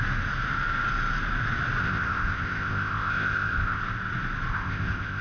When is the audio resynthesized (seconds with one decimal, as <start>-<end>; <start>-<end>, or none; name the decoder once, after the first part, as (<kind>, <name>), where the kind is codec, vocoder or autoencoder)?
1.8-3.8 (codec, ZipCodec); 4.5-5.2